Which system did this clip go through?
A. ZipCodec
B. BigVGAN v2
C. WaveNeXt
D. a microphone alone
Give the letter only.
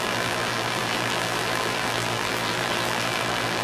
B